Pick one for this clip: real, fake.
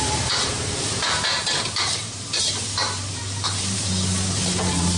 fake